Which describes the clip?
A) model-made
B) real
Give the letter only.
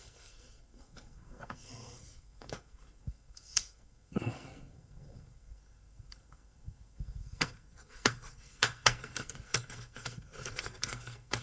A